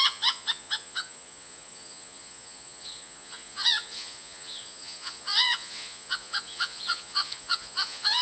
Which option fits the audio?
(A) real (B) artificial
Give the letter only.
B